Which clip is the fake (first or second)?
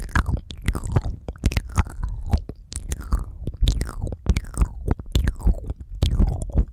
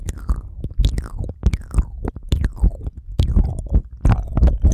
second